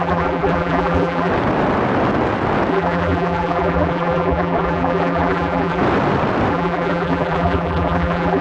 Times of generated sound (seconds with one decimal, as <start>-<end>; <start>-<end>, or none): 0.0-1.3; 2.7-5.8; 6.5-8.4